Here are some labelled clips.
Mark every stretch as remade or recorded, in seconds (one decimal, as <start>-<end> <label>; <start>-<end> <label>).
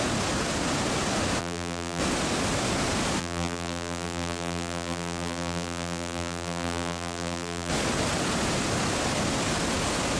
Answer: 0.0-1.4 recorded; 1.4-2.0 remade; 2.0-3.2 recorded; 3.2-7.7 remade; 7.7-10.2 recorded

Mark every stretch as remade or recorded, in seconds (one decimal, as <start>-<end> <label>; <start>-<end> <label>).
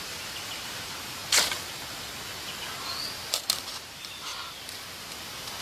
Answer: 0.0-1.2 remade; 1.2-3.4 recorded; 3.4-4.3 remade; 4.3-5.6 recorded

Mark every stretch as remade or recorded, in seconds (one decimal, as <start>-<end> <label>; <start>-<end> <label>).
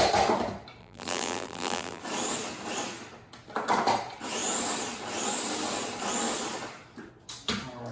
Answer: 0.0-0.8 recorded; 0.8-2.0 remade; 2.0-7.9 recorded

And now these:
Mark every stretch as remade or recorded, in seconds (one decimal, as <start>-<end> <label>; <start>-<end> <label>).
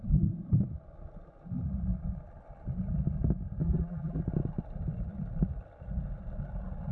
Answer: 0.0-3.6 recorded; 3.6-4.2 remade; 4.2-6.9 recorded